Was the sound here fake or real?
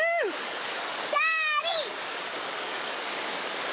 fake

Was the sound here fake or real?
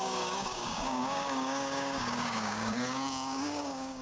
fake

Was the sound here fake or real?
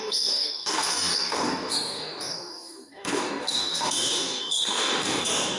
fake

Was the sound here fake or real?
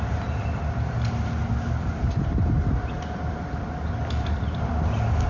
real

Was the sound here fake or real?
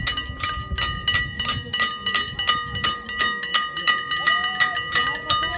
real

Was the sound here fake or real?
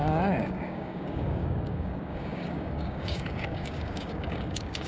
fake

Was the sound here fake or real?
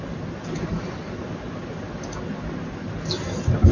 real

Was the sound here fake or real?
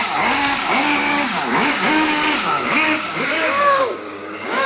fake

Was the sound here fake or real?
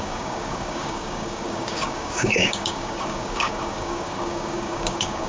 fake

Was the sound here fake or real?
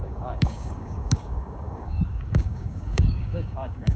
fake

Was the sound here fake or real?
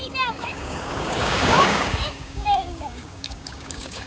fake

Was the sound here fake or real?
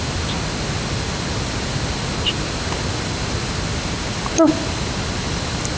real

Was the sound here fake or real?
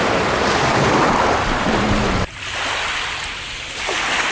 real